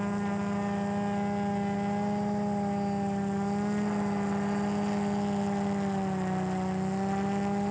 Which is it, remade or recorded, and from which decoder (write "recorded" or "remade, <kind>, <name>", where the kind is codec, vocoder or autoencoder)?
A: recorded